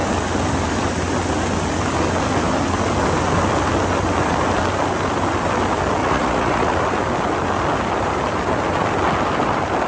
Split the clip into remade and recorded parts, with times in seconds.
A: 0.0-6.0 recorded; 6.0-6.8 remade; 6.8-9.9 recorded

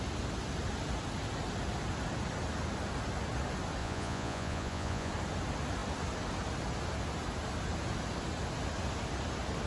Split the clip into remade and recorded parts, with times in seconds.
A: 0.0-3.8 recorded; 3.8-5.1 remade; 5.1-9.7 recorded

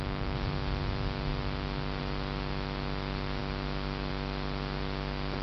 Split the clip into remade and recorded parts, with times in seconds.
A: 0.0-5.4 recorded

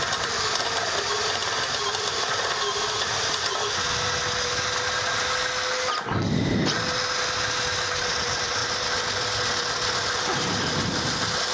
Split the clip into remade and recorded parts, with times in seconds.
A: 0.0-11.5 recorded